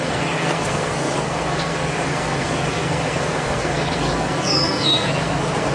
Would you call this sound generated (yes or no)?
yes